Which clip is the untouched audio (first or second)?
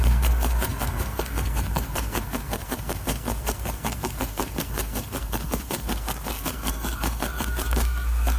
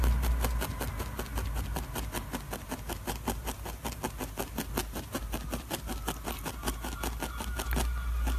second